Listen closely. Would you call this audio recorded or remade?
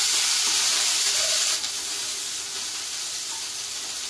recorded